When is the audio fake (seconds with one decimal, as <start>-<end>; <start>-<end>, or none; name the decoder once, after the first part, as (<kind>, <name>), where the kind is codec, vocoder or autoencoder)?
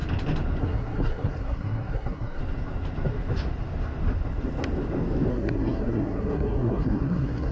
0.6-2.4 (codec, SNAC); 5.3-7.5